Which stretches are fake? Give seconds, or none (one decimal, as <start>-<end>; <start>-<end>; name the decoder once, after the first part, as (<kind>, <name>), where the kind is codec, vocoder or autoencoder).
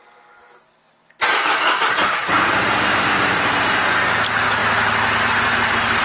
none